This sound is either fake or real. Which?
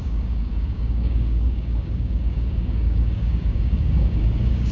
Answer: fake